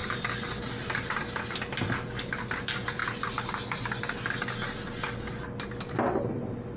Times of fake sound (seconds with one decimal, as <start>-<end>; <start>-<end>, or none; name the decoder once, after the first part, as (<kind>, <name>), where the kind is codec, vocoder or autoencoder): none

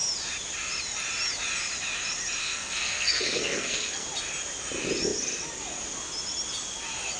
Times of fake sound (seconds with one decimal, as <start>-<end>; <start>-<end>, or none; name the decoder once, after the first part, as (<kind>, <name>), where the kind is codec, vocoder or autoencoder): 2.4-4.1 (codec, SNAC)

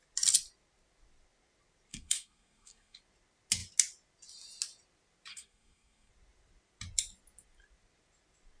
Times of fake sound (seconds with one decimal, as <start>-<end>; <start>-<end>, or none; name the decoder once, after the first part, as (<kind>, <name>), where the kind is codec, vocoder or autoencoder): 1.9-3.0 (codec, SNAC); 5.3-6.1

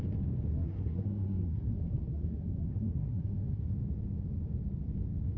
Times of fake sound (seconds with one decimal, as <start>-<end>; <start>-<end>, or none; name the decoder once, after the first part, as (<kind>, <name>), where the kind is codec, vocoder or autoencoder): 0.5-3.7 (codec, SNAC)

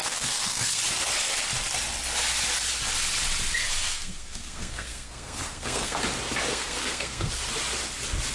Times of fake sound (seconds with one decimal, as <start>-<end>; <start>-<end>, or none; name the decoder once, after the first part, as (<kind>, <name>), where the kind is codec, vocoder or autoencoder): 0.0-0.8 (codec, SNAC); 3.6-6.0; 6.5-7.3